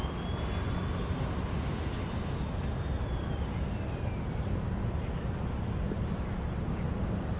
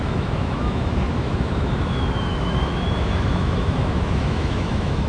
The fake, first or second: second